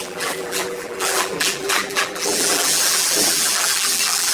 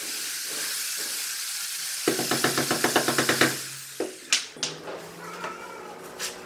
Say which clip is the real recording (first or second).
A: second